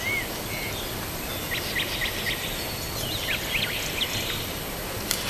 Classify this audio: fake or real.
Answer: real